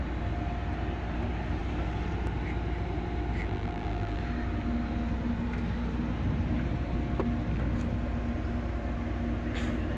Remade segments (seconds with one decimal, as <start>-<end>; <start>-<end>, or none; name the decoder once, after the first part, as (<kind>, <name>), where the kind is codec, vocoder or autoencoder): 3.4-4.2 (vocoder, BigVGAN v2)